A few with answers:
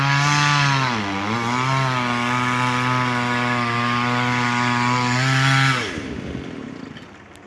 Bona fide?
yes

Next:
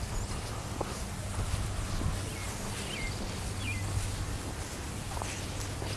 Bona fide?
yes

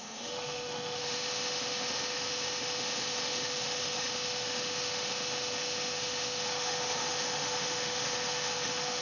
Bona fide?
no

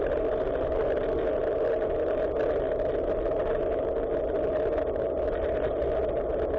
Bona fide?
yes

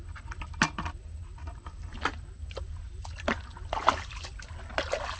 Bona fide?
yes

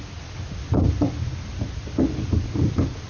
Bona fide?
yes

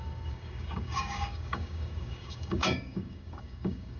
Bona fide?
no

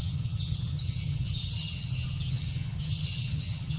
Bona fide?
no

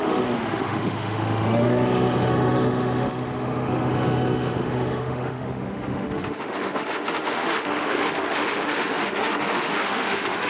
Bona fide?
no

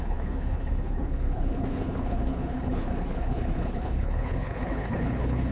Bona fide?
no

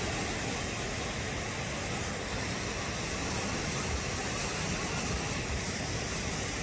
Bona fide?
yes